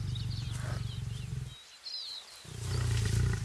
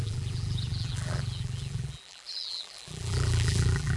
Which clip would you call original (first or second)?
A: first